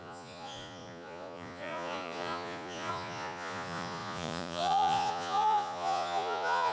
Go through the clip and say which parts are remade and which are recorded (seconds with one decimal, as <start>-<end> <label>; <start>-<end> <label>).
0.0-6.7 remade